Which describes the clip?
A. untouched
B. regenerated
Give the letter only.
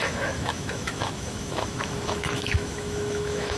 B